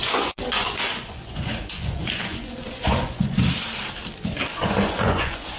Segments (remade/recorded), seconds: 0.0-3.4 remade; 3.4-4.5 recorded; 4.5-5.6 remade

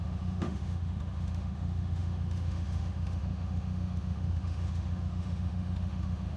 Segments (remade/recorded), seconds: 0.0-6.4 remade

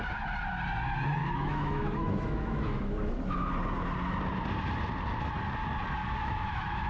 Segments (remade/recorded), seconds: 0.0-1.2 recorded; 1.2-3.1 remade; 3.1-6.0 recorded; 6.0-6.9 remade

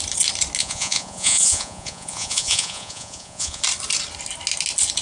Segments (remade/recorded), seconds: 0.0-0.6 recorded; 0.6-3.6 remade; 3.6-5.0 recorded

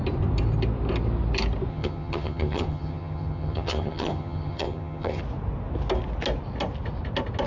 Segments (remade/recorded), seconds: 0.0-1.7 recorded; 1.7-5.2 remade; 5.2-7.5 recorded

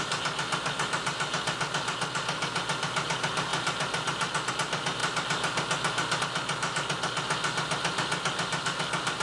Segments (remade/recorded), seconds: 0.0-9.2 recorded

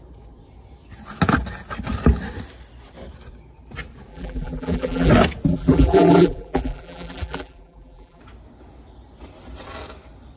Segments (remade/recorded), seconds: 0.0-4.1 recorded; 4.1-5.1 remade; 5.1-5.5 recorded; 5.5-8.2 remade; 8.2-10.4 recorded

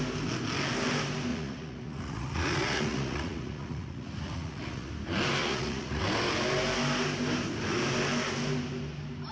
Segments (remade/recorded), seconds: 0.0-1.3 recorded; 1.3-4.9 remade; 4.9-5.4 recorded; 5.4-6.0 remade; 6.0-9.3 recorded